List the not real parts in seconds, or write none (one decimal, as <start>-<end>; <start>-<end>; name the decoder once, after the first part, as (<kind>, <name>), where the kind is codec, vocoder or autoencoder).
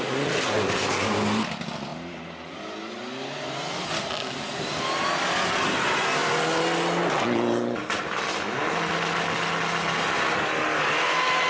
none